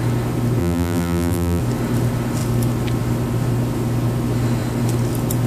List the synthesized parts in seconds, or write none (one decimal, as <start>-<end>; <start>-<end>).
0.6-1.6